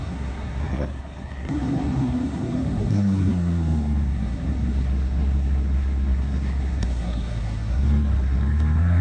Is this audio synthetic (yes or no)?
yes